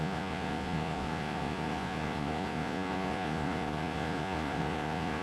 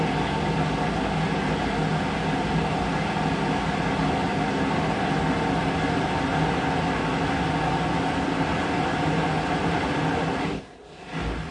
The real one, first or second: second